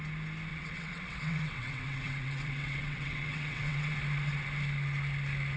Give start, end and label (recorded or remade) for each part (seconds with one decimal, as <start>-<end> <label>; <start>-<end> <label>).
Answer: 0.0-0.5 recorded; 0.5-3.9 remade; 3.9-5.6 recorded